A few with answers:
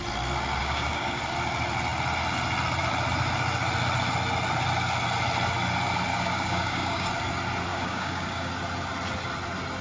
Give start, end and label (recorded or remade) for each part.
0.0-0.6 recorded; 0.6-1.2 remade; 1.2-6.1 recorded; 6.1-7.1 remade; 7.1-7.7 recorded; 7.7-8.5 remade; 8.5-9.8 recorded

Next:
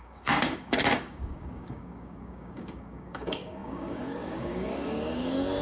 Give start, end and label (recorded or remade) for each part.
0.0-5.6 remade

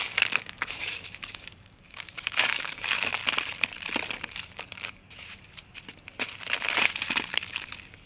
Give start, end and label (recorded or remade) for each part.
0.0-3.2 remade; 3.2-4.3 recorded; 4.3-5.0 remade; 5.0-7.3 recorded; 7.3-8.1 remade